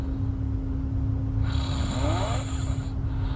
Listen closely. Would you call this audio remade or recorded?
recorded